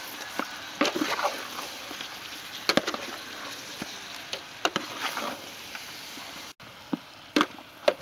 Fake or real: real